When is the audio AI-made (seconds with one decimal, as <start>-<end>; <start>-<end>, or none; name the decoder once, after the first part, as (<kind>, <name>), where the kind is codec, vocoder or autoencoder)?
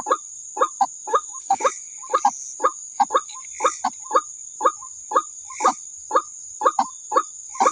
1.1-1.7 (autoencoder, DAC-VAE)